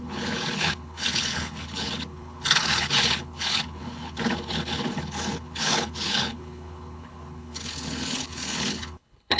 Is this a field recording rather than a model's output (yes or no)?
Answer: no